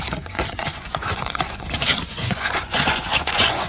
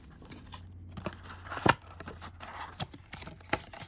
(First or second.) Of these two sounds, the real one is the second